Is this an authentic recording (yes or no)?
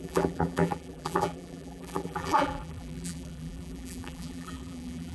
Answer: no